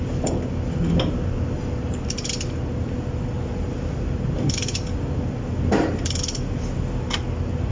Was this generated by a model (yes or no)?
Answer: no